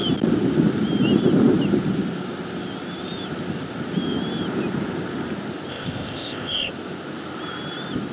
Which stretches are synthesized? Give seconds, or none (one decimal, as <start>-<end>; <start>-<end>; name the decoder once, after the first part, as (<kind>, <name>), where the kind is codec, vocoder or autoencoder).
5.7-6.7 (codec, ZipCodec)